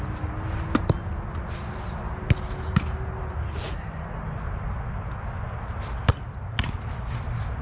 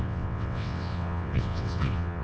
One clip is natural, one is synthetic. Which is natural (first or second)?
first